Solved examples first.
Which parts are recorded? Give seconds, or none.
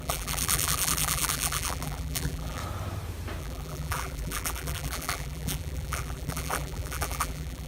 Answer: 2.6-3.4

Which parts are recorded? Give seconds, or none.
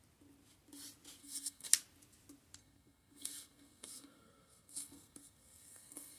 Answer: 0.0-1.2; 1.7-2.6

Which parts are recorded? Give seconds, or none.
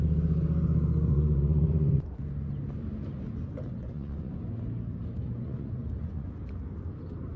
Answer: 0.0-1.1; 2.2-3.8; 4.4-5.2; 6.4-7.4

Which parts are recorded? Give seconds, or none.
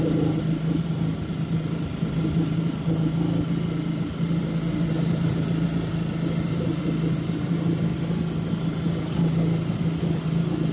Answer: 0.0-10.7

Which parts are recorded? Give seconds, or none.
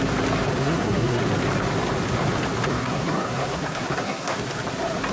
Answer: 0.0-0.6; 1.2-2.7; 4.4-5.1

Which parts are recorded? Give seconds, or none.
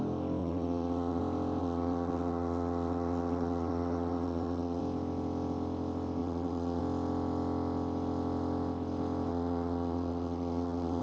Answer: 0.0-0.4; 1.2-1.6; 4.8-6.2; 6.8-9.3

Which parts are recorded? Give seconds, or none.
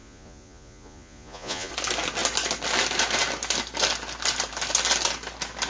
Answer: 1.7-5.7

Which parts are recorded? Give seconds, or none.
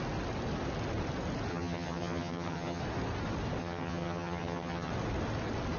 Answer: 0.0-1.5; 2.8-3.6; 4.9-5.8